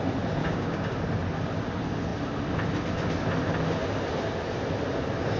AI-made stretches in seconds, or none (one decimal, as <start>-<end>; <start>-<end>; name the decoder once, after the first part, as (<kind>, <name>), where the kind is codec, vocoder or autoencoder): 0.4-0.9 (codec, DAC)